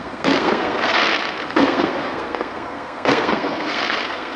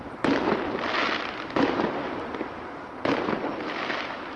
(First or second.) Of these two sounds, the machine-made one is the first